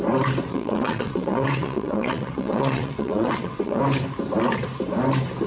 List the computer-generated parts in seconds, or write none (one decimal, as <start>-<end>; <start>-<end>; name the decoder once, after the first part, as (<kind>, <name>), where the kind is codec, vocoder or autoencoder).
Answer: 0.5-3.8 (vocoder, WaveNeXt)